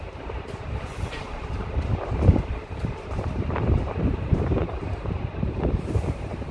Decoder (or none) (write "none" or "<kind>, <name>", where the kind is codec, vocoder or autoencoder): vocoder, BigVGAN v2